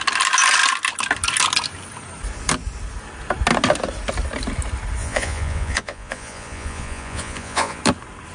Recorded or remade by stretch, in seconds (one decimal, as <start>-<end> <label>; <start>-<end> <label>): 0.0-5.0 recorded; 5.0-7.8 remade; 7.8-8.3 recorded